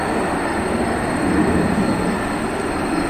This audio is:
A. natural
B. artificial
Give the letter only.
A